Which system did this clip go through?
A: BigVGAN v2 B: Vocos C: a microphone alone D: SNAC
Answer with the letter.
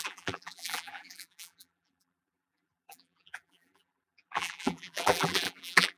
A